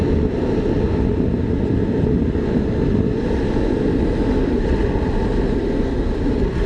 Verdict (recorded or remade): recorded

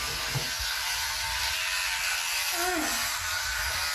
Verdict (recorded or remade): recorded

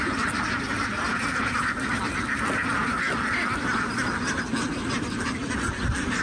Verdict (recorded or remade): recorded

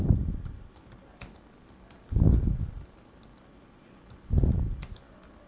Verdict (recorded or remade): recorded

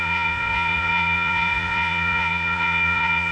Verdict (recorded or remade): remade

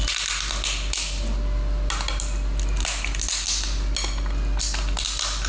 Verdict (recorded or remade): recorded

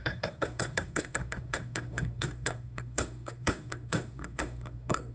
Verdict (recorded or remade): remade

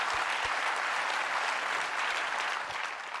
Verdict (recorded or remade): recorded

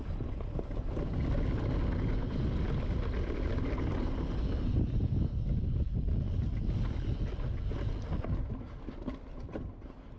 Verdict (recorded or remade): recorded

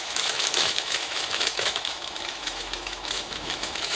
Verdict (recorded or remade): remade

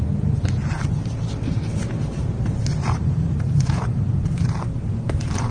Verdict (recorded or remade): remade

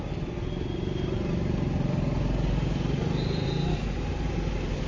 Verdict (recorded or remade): recorded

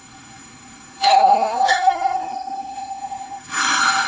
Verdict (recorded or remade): remade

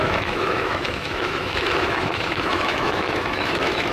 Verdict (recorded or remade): remade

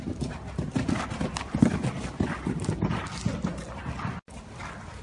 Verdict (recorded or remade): recorded